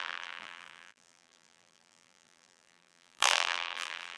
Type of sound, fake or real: fake